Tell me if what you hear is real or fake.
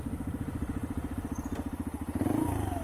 real